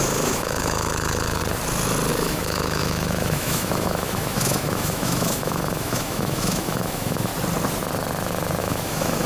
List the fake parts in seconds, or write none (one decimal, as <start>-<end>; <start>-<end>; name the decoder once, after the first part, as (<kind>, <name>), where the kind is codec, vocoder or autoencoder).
0.0-1.4 (autoencoder, DAC-VAE); 2.1-7.3; 8.6-9.3